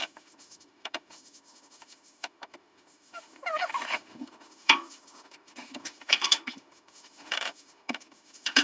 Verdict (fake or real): fake